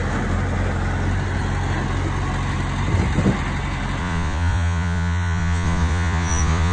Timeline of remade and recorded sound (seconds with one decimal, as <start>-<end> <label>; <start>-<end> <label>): 0.0-4.0 recorded; 4.0-6.7 remade

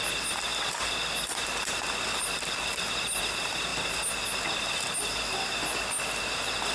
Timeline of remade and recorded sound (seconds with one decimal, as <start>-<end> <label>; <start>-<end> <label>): 0.0-6.7 recorded